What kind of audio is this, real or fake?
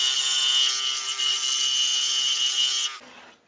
real